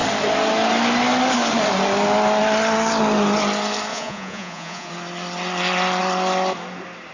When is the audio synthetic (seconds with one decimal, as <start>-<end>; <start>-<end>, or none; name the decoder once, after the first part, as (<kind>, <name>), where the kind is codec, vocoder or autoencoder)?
3.9-4.9 (vocoder, Vocos)